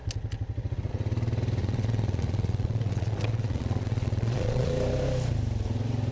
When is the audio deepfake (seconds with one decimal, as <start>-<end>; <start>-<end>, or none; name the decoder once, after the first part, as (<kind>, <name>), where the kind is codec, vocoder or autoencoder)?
1.6-4.7 (vocoder, Vocos)